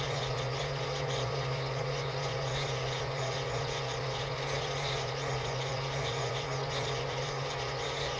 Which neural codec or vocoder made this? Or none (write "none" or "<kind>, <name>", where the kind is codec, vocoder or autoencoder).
vocoder, Vocos